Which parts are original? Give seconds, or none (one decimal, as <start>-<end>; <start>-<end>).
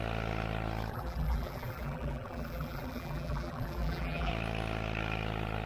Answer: 0.0-0.9; 4.3-5.7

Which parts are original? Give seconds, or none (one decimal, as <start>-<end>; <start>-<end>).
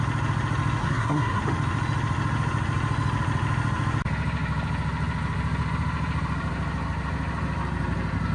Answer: 0.0-0.8; 1.4-8.3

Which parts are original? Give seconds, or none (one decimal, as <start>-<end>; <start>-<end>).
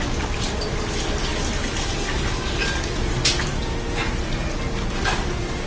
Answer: 0.0-5.7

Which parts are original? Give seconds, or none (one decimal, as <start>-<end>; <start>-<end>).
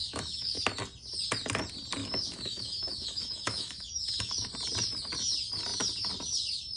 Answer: 0.6-2.0; 4.5-6.8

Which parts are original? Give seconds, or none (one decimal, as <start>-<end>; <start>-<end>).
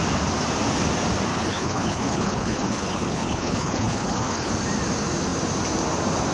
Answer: 0.0-1.3; 4.5-6.3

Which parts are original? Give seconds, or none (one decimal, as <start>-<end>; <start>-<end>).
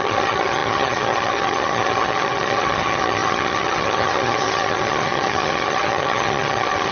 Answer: none